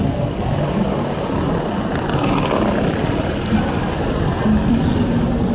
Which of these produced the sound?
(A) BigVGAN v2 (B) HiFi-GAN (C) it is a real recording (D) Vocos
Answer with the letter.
C